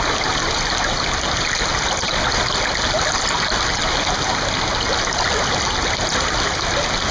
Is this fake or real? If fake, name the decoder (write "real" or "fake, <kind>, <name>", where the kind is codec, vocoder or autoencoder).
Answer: real